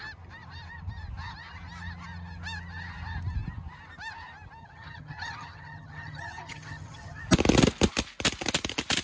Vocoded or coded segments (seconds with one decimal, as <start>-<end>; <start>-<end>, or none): 4.6-7.2